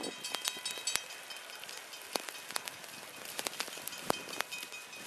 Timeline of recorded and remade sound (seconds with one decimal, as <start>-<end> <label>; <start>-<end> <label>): 0.0-1.4 recorded; 1.4-4.5 remade; 4.5-5.1 recorded